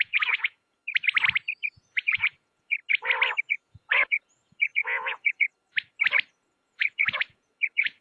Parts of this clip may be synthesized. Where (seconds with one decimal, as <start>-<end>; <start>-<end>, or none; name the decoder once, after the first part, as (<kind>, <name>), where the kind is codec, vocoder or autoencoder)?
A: 0.0-0.8 (vocoder, Vocos); 1.7-2.8; 3.4-5.5; 6.4-8.0